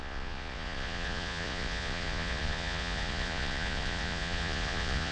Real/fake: fake